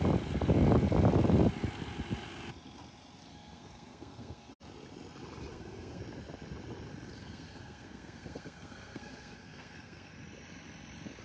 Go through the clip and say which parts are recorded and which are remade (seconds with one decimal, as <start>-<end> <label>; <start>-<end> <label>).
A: 0.0-3.3 recorded; 3.3-4.5 remade; 4.5-5.5 recorded; 5.5-6.0 remade; 6.0-7.2 recorded; 7.2-10.1 remade; 10.1-11.2 recorded